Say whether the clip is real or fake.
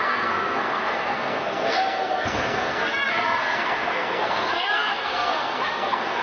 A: fake